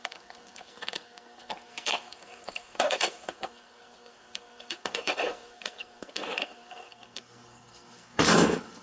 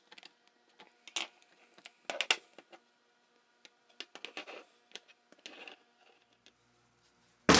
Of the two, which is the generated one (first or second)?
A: first